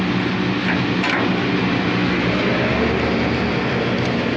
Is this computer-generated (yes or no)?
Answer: no